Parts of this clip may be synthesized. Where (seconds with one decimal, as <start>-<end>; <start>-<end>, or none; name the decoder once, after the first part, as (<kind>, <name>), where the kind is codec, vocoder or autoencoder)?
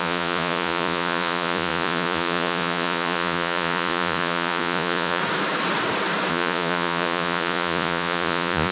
0.0-5.2 (vocoder, Vocos); 6.3-8.7